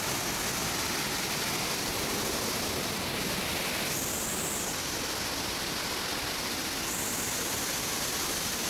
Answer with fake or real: real